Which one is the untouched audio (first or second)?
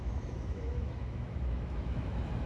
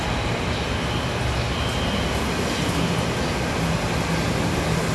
second